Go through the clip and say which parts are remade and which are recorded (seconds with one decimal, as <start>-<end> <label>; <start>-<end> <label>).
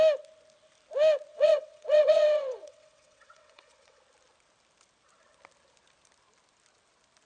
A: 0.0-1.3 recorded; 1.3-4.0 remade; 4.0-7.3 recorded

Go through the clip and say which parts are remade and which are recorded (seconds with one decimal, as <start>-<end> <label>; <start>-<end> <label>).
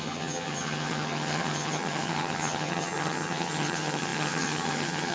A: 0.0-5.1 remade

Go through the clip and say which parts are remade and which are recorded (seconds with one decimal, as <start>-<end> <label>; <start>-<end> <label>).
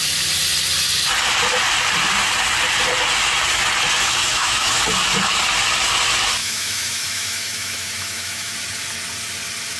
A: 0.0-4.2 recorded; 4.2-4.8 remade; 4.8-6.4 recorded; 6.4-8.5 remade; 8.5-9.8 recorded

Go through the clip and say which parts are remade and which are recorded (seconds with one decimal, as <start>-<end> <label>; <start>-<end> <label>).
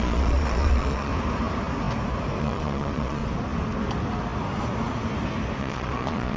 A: 0.0-1.1 remade; 1.1-2.4 recorded; 2.4-3.2 remade; 3.2-5.6 recorded; 5.6-6.4 remade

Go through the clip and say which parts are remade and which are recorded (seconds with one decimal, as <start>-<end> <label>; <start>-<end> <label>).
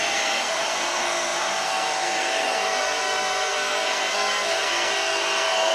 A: 0.0-5.7 remade